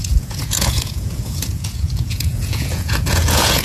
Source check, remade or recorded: remade